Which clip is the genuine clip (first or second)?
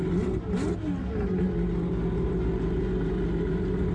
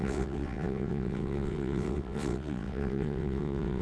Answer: first